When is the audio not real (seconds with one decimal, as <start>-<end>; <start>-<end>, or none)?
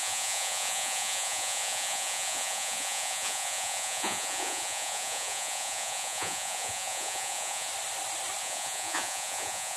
0.0-7.7; 8.4-9.8